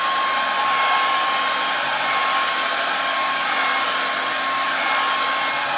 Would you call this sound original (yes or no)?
yes